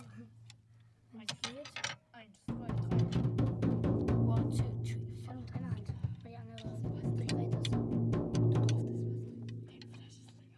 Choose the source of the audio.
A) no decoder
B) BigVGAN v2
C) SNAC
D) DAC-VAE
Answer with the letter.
A